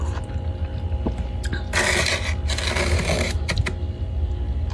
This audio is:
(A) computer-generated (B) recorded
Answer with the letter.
B